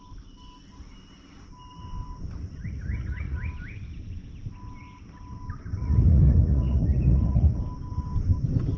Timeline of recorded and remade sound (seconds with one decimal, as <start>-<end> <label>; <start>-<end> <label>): 0.0-2.6 recorded; 2.6-3.5 remade; 3.5-5.8 recorded; 5.8-7.6 remade; 7.6-8.8 recorded